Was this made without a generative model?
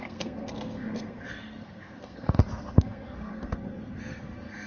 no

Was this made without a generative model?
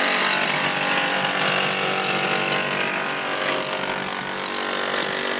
yes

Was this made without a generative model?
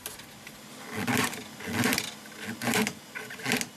yes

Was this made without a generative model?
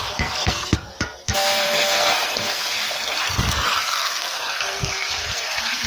no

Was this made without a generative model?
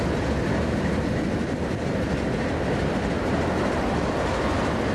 yes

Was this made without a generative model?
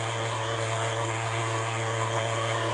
no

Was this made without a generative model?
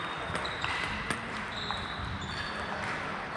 yes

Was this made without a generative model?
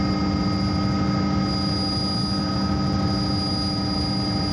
yes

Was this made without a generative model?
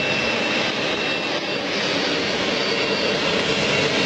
yes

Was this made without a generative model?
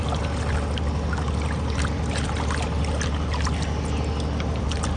yes